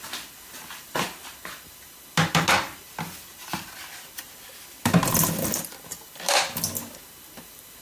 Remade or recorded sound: recorded